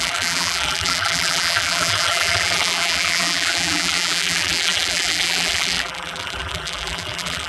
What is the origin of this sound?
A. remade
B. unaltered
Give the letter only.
A